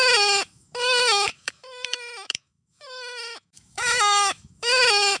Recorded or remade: remade